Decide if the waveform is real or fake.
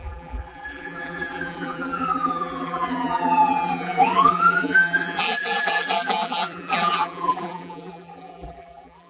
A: fake